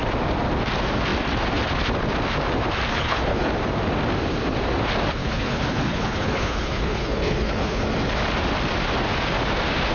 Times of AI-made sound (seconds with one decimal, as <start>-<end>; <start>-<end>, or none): 2.9-3.5; 5.2-7.8